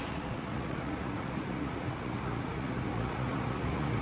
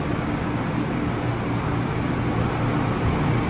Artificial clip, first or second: first